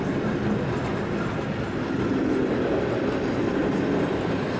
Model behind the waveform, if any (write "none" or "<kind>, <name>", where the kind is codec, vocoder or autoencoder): none